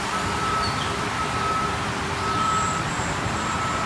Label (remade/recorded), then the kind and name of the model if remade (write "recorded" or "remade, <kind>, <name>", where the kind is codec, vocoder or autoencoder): remade, vocoder, BigVGAN v2